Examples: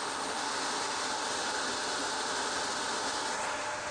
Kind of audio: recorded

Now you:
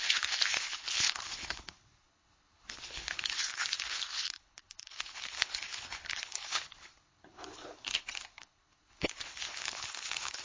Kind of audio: remade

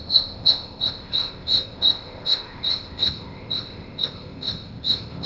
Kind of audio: remade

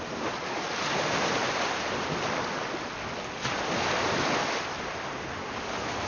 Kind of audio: recorded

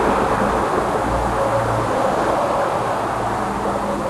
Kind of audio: recorded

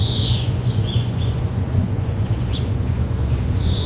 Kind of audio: remade